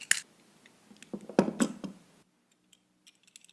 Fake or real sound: real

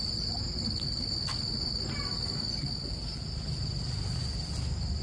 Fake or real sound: real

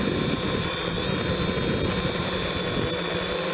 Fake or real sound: real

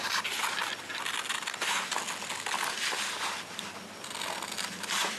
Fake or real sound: real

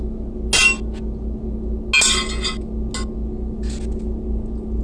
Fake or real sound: real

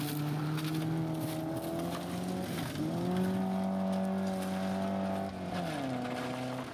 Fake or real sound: real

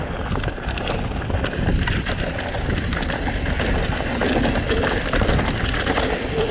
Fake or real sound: real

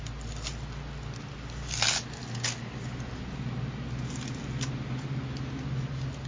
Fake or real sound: real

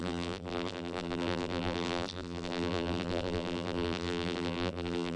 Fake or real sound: fake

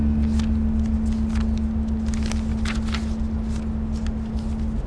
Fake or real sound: real